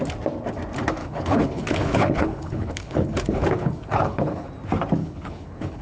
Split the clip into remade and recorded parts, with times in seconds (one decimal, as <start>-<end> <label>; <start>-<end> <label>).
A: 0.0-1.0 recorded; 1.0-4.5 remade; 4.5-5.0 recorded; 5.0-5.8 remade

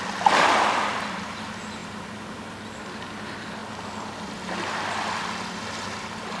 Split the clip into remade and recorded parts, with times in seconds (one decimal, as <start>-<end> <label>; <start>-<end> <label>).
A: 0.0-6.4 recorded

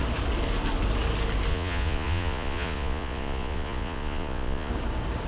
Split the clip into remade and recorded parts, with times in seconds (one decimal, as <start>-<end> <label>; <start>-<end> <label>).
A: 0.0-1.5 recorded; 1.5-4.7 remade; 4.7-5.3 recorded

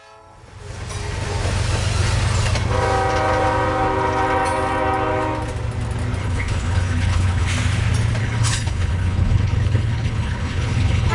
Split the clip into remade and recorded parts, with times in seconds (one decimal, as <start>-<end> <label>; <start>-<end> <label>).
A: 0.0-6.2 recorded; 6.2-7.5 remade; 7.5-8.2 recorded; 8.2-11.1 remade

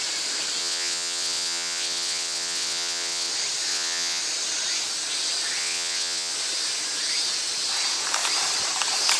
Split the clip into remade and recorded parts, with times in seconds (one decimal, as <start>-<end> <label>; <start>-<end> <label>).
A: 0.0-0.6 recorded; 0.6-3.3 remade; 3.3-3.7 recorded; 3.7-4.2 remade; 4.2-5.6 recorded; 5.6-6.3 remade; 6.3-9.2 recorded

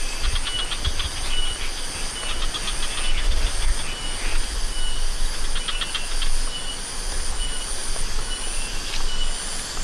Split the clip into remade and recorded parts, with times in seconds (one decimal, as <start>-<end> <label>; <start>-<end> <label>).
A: 0.0-9.8 recorded